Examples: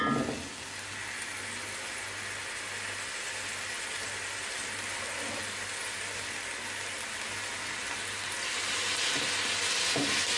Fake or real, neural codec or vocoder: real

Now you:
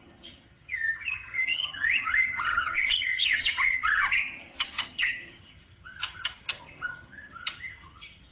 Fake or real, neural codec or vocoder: fake, vocoder, HiFi-GAN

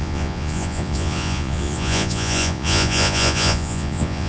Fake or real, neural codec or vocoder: fake, vocoder, Vocos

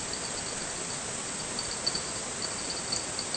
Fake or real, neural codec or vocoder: real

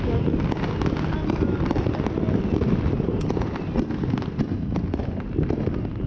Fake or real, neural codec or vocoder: real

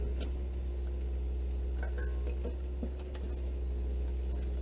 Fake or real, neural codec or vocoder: real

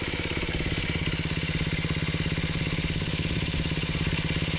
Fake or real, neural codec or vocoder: real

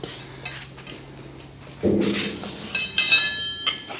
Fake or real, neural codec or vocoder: real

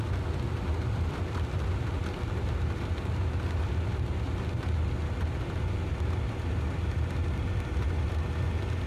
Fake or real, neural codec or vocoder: real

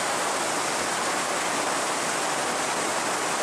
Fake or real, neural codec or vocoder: real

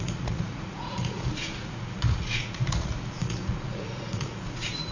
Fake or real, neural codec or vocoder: fake, vocoder, Vocos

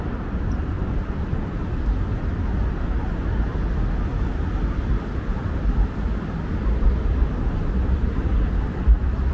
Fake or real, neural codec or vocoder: real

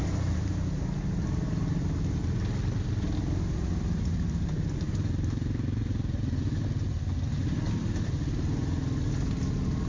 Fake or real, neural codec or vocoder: real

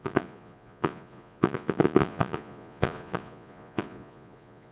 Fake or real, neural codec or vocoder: fake, vocoder, Vocos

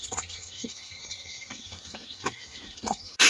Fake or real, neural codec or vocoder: fake, codec, SNAC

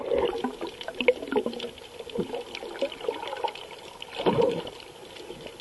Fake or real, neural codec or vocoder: real